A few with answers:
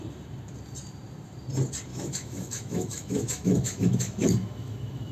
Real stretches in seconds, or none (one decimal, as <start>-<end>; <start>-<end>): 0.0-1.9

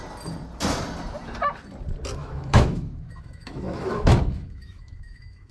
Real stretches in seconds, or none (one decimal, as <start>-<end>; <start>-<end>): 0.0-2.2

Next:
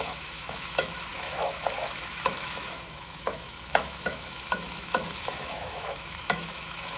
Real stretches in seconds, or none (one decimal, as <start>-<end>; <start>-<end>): none

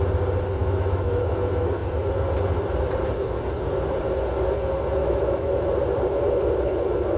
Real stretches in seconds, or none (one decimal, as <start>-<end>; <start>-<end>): 0.0-0.6; 1.2-5.0; 5.7-7.2